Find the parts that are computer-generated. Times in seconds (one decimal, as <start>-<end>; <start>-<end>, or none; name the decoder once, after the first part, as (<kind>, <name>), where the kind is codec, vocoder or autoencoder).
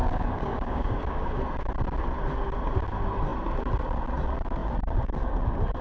0.0-1.4 (codec, DAC)